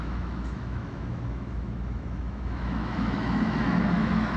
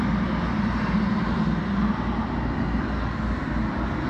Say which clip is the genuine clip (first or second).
second